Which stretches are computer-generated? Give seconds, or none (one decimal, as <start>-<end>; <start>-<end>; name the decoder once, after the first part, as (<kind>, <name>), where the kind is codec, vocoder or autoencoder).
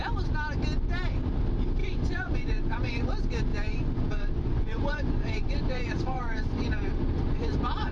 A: 1.8-3.1 (vocoder, Vocos); 3.5-7.9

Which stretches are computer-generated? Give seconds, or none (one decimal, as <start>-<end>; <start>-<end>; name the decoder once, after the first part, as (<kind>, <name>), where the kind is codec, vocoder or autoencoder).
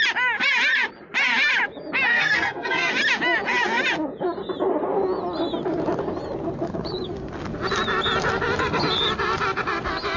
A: 2.1-2.9 (codec, SNAC)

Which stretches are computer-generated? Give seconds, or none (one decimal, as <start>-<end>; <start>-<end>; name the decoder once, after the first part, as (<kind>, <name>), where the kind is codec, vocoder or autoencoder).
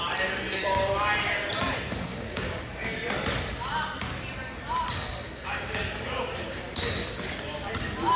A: 0.0-1.4 (codec, DAC); 1.9-3.0; 4.9-6.8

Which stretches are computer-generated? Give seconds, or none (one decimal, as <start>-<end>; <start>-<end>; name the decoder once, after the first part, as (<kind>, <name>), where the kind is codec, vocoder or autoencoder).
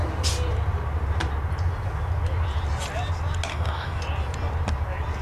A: 3.5-4.0 (codec, DAC)